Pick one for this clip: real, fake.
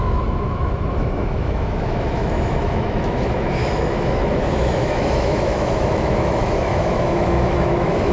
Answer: fake